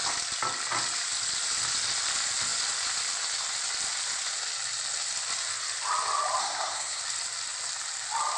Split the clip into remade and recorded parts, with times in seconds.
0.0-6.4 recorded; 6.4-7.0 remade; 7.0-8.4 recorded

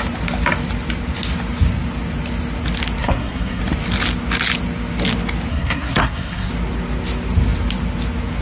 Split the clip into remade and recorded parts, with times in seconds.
0.0-3.0 recorded; 3.0-3.6 remade; 3.6-5.5 recorded; 5.5-6.5 remade; 6.5-8.4 recorded

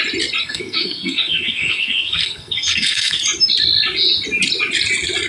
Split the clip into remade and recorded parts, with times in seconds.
0.0-0.4 recorded; 0.4-3.2 remade; 3.2-5.3 recorded

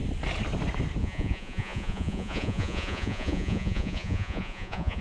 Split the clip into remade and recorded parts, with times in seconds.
0.0-1.0 recorded; 1.0-5.0 remade

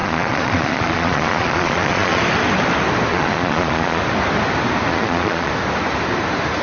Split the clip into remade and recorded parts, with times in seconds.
0.0-2.2 remade; 2.2-3.1 recorded; 3.1-4.0 remade; 4.0-4.9 recorded; 4.9-5.5 remade; 5.5-6.6 recorded

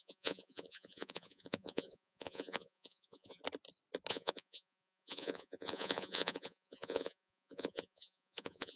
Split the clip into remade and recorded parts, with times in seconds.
0.0-3.4 remade; 3.4-4.1 recorded; 4.1-8.8 remade

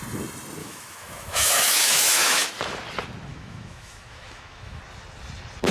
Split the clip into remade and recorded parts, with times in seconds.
0.0-0.6 recorded; 0.6-2.5 remade; 2.5-3.3 recorded; 3.3-4.8 remade; 4.8-5.7 recorded